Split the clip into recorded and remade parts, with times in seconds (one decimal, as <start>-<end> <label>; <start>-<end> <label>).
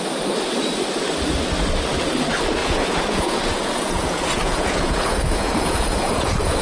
0.0-2.6 recorded; 2.6-6.6 remade